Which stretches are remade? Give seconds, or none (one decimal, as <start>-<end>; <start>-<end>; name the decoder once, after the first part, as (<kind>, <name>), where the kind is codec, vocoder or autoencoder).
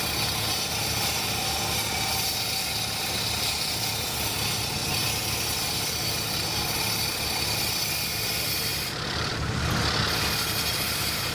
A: 8.7-9.3 (vocoder, BigVGAN v2)